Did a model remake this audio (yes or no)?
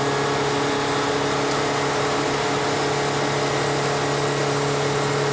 no